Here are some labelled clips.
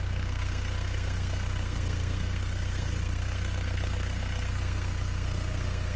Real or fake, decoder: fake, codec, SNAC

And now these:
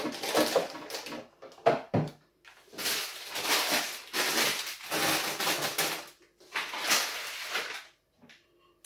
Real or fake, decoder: real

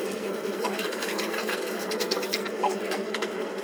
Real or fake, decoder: fake, codec, SNAC